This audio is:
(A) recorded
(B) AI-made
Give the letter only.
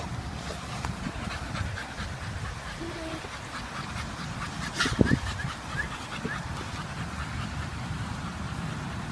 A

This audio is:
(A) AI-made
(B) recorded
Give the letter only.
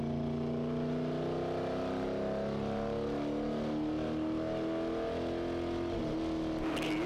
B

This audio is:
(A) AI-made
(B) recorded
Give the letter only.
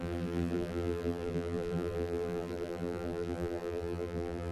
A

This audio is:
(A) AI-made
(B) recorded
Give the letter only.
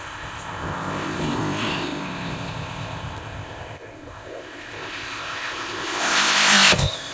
A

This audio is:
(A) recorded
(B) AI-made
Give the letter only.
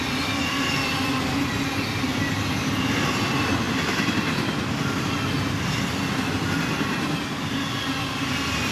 A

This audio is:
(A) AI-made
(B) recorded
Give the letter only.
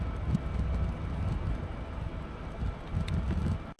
B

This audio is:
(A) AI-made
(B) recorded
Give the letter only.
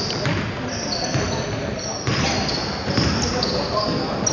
B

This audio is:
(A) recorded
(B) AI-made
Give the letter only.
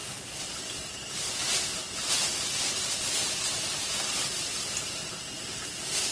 A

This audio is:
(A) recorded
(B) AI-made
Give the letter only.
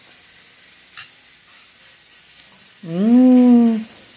A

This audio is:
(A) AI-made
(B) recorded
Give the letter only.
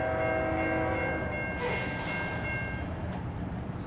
B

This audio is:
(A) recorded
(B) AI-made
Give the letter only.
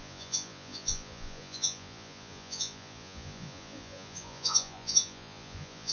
B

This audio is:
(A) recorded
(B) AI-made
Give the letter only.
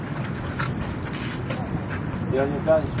A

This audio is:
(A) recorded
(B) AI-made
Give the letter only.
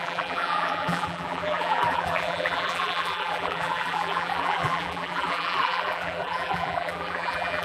B